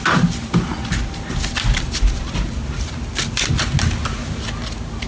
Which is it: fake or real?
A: real